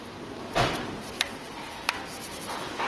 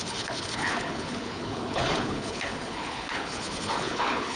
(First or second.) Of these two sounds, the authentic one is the first